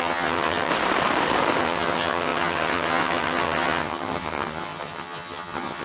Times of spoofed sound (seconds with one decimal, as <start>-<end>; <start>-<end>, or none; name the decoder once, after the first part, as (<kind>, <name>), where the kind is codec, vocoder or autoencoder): 0.0-0.7 (vocoder, HiFi-GAN); 1.6-5.8

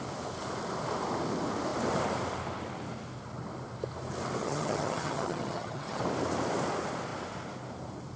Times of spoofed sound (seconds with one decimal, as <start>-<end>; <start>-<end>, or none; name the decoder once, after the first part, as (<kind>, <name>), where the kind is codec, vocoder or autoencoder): 4.4-6.0 (vocoder, HiFi-GAN)